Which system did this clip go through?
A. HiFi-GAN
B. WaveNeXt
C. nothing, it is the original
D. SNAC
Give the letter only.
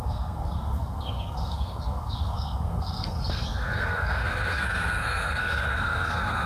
D